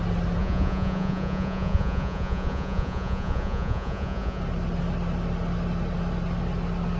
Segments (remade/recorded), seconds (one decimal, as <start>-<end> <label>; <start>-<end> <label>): 0.0-0.4 recorded; 0.4-4.4 remade; 4.4-7.0 recorded